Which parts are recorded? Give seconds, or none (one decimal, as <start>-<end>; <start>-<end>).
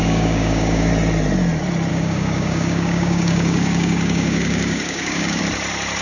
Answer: 0.9-1.9; 5.4-6.0